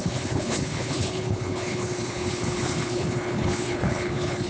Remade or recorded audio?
remade